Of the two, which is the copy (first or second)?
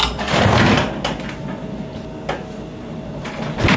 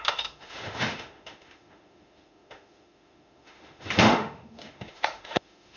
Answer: second